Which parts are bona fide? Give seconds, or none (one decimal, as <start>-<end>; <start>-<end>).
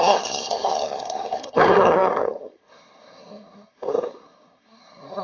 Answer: none